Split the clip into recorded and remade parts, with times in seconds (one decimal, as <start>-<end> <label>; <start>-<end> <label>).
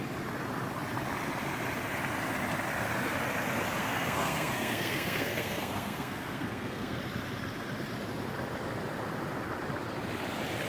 0.0-3.8 recorded; 3.8-7.0 remade; 7.0-10.7 recorded